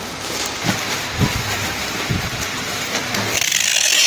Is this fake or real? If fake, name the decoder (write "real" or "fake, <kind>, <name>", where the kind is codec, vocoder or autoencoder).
real